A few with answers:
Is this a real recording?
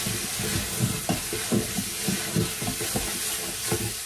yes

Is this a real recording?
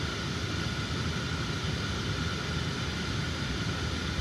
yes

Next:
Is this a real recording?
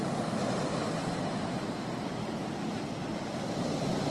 yes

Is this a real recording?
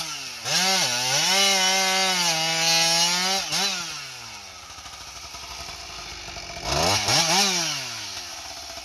yes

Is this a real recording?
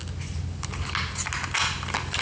yes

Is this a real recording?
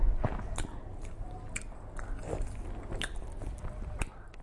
yes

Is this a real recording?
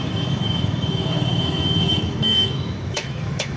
no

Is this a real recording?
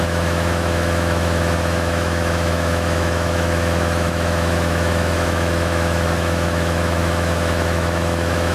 no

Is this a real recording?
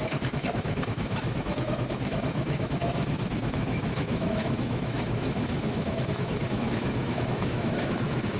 no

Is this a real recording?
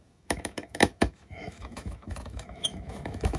no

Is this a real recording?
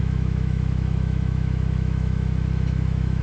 no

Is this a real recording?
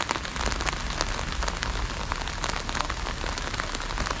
yes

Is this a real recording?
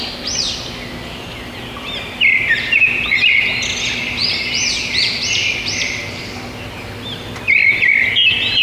yes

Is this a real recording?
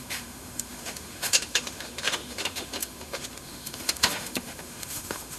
no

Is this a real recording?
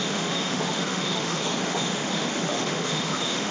no